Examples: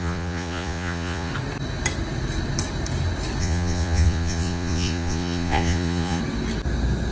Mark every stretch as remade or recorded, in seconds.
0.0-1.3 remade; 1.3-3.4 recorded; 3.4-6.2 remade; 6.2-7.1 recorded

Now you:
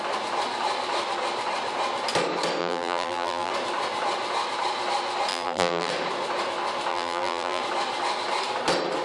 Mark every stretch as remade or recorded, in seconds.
0.0-2.6 recorded; 2.6-3.5 remade; 3.5-5.3 recorded; 5.3-5.9 remade; 5.9-6.9 recorded; 6.9-7.6 remade; 7.6-9.0 recorded